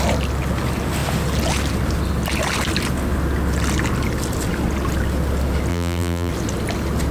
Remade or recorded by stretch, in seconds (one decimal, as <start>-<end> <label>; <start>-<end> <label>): 0.0-5.7 recorded; 5.7-6.3 remade; 6.3-7.1 recorded